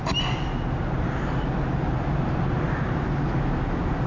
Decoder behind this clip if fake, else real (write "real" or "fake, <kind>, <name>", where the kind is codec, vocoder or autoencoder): real